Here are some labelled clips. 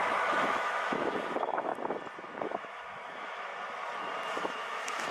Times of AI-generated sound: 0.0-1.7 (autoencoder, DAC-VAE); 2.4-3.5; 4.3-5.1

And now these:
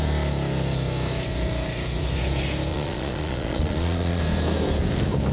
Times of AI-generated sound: 2.7-4.2 (vocoder, Vocos)

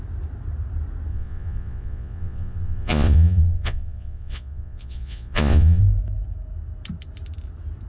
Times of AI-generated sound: 1.1-5.8 (vocoder, Vocos)

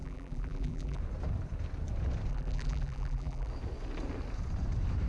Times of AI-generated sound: 0.0-1.0 (vocoder, BigVGAN v2); 2.3-3.5